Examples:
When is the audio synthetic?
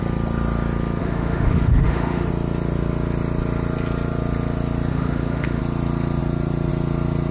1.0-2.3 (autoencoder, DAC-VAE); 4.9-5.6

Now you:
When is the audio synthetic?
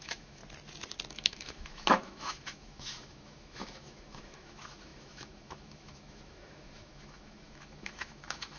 0.0-0.4 (autoencoder, DAC-VAE); 1.1-8.6